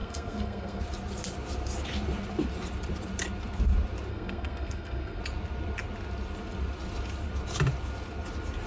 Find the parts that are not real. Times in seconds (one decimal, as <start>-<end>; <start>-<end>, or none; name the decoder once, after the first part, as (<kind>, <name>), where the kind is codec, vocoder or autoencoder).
0.0-0.8 (codec, SNAC); 4.1-5.2